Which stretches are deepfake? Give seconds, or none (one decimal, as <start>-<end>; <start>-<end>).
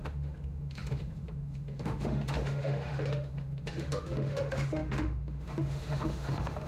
0.0-6.7